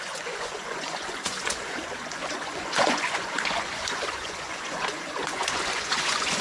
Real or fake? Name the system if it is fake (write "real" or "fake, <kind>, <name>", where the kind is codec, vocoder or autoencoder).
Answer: fake, vocoder, Vocos